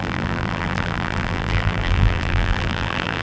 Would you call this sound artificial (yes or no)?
yes